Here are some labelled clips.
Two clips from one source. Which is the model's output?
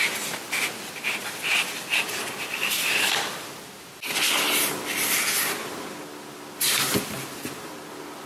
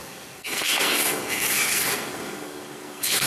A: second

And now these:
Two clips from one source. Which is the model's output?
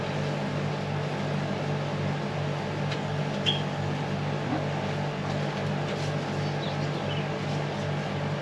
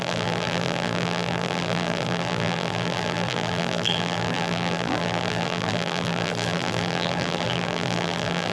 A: second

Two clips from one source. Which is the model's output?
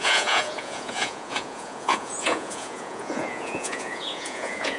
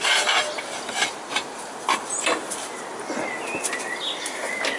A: first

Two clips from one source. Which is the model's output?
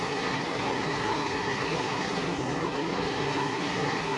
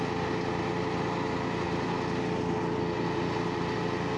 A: first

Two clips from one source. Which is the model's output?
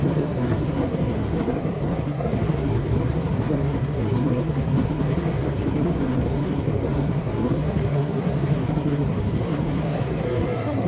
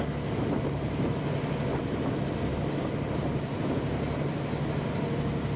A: first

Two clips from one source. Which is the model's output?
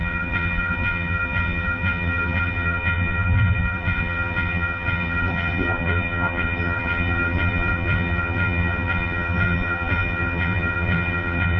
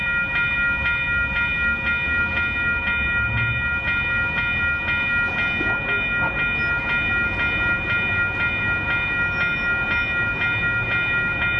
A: first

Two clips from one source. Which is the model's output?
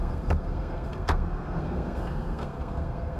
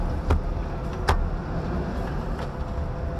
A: first